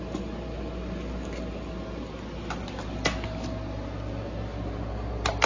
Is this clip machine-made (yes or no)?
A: no